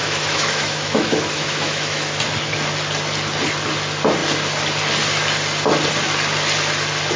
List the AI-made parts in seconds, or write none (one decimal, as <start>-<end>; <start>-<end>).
0.0-2.2